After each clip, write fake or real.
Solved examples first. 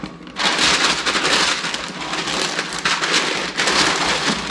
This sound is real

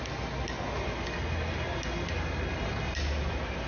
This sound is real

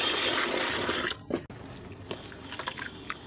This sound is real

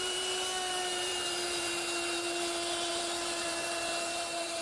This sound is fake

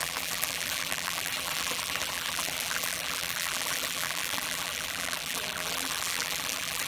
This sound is fake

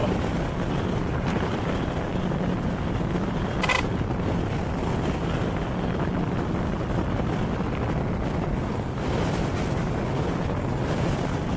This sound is real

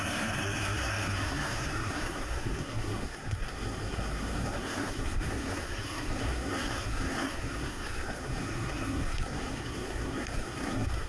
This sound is fake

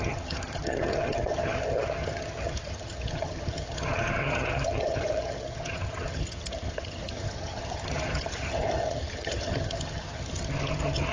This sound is fake